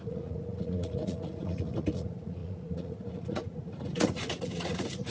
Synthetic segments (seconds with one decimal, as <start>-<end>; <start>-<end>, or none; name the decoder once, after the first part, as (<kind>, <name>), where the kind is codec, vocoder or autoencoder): 0.0-5.1 (vocoder, Vocos)